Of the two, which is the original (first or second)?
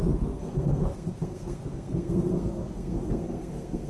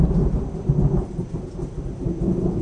second